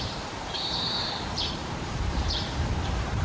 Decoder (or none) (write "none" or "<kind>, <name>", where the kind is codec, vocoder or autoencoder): vocoder, BigVGAN v2